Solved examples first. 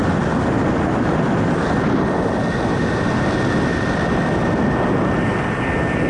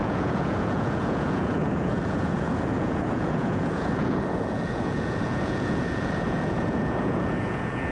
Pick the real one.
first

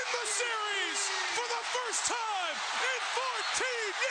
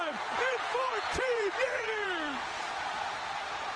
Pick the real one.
first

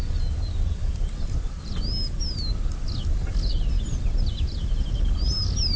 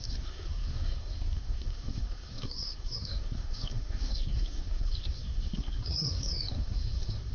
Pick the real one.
first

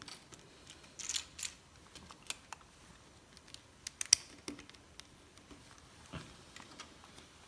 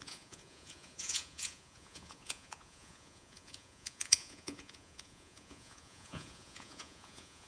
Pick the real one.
first